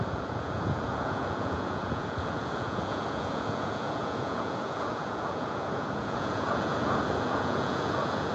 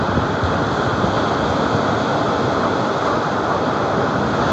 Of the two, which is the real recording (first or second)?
second